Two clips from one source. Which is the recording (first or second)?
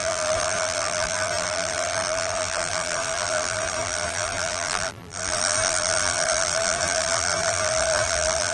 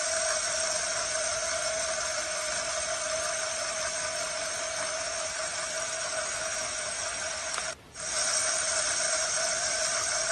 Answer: second